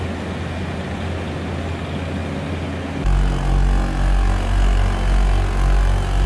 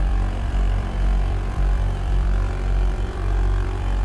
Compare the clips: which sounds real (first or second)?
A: first